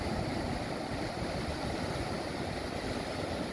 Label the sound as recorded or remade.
remade